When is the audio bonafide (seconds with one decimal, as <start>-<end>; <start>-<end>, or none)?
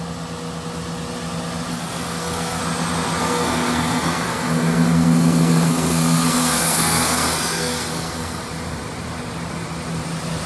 0.0-1.7; 2.6-3.2; 8.4-10.5